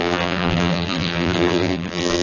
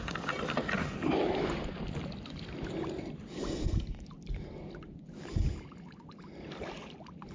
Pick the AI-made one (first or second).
first